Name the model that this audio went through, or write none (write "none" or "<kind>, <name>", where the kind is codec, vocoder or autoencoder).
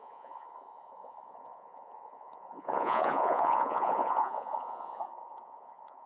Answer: vocoder, Vocos